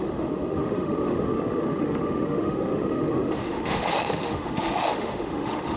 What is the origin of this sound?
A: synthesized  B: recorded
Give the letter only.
A